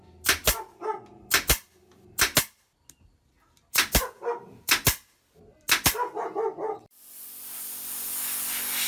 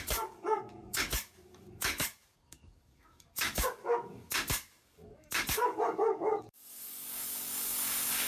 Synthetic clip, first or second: second